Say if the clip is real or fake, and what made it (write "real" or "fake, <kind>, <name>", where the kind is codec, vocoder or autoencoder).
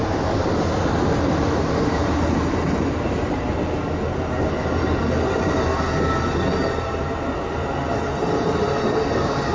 real